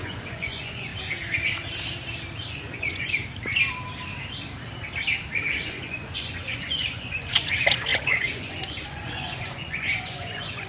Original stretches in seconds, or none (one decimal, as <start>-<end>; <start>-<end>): 0.9-2.5; 3.2-5.6